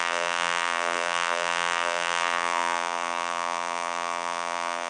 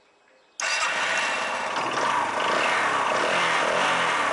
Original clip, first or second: second